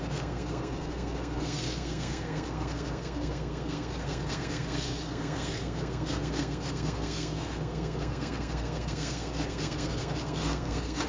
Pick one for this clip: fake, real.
fake